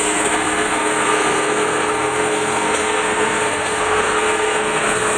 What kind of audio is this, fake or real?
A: fake